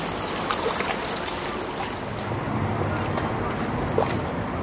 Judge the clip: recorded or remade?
recorded